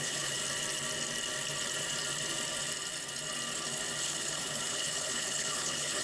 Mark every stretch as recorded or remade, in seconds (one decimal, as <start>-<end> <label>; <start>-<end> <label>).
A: 0.0-0.4 remade; 0.4-4.0 recorded; 4.0-6.0 remade